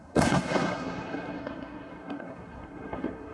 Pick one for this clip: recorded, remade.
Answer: remade